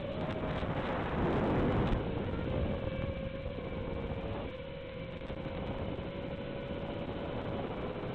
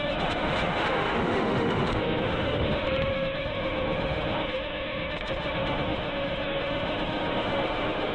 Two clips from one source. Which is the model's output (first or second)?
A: second